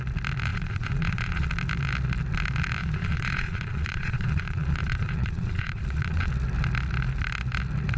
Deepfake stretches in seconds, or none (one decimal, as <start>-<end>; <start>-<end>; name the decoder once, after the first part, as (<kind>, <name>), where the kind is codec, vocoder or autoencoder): 0.5-1.5 (vocoder, Vocos); 2.8-6.3